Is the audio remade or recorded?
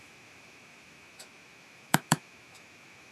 remade